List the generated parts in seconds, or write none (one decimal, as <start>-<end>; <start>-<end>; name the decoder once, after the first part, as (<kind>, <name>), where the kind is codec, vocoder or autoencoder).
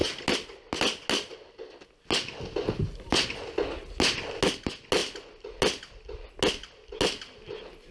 none